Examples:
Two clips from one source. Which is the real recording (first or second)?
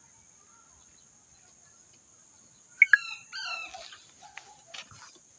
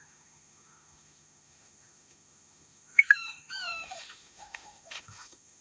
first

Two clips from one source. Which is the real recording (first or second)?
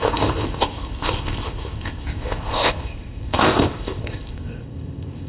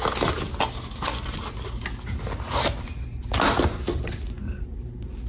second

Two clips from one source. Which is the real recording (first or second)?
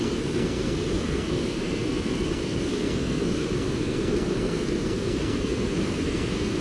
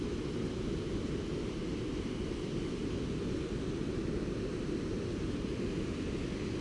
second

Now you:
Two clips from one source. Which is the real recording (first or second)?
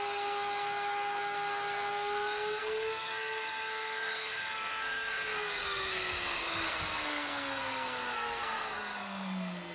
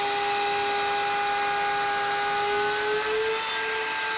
second